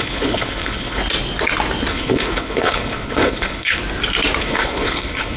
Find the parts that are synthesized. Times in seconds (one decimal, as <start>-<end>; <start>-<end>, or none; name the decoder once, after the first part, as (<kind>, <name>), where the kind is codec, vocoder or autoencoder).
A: 0.0-1.0 (codec, HILCodec); 1.9-3.8; 4.4-5.4